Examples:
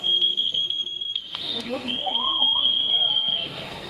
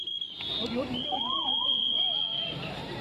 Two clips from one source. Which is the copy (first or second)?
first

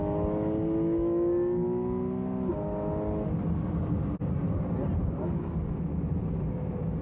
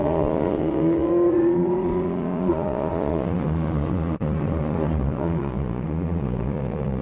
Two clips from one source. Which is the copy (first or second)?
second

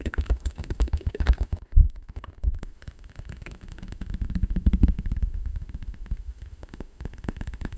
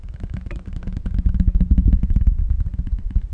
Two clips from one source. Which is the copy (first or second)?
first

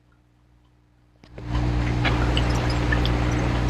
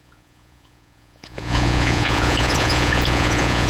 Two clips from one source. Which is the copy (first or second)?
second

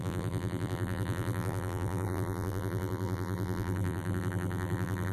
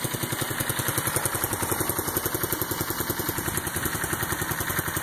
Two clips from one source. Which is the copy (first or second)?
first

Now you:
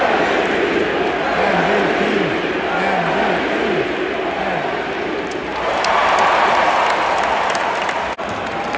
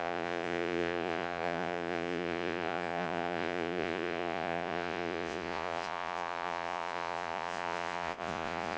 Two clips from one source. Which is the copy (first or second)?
second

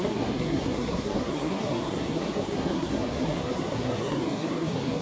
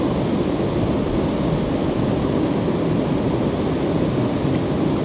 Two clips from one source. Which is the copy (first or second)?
first